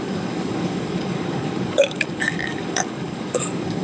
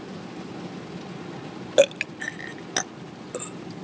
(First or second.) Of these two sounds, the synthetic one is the first